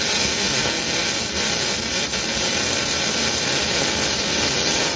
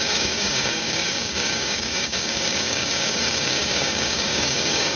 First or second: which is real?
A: first